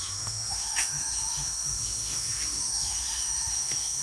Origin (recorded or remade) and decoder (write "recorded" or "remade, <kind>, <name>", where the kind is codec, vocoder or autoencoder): remade, autoencoder, DAC-VAE